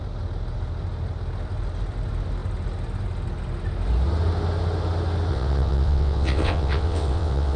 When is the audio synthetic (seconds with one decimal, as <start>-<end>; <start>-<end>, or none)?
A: 5.3-7.6